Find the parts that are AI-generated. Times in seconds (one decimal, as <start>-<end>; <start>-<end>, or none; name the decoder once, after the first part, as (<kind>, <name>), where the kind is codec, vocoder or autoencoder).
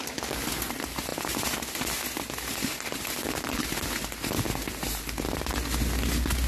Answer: none